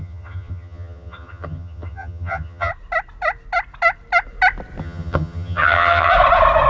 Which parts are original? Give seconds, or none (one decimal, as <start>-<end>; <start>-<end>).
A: 2.7-4.8; 6.1-6.7